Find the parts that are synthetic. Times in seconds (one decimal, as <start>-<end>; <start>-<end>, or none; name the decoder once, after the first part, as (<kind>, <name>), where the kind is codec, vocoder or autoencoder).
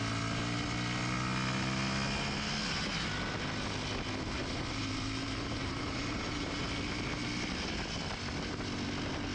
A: 4.4-6.6 (vocoder, BigVGAN v2)